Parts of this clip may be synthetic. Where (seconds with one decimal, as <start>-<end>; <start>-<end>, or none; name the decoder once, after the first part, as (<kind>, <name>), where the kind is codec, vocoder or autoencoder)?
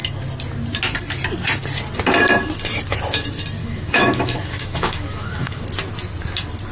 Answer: 3.6-5.6 (autoencoder, DAC-VAE)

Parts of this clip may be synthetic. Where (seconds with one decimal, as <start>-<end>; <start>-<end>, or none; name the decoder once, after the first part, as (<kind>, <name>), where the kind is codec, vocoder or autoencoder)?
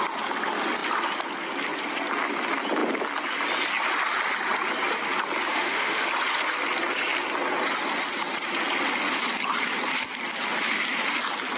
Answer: 5.5-6.1 (autoencoder, DAC-VAE)